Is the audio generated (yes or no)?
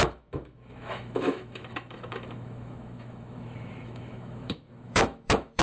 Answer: yes